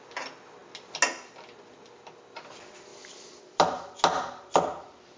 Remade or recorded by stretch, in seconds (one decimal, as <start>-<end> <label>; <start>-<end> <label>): 0.0-5.2 recorded